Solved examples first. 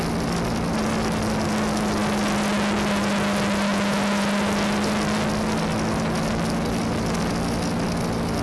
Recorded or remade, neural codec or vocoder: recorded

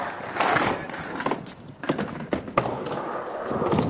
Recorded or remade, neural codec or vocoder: recorded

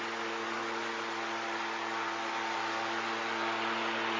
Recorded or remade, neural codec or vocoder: recorded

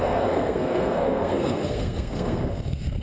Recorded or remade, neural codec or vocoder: remade, codec, SNAC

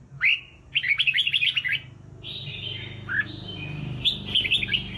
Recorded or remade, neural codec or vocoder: recorded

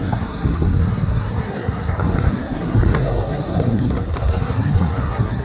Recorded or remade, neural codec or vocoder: remade, codec, SNAC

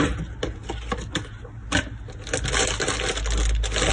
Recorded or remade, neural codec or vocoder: recorded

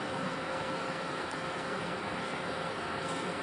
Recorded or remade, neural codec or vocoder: remade, codec, SNAC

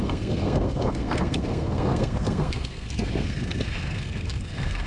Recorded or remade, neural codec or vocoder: remade, codec, SNAC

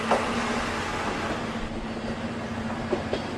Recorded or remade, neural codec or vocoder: recorded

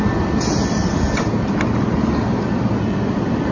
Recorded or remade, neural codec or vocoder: recorded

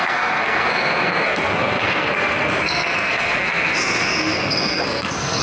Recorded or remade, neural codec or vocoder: remade, codec, SNAC